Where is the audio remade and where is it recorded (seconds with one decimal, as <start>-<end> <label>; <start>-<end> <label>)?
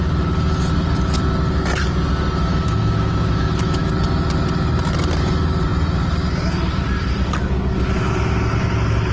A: 0.0-2.5 recorded; 2.5-3.9 remade; 3.9-9.1 recorded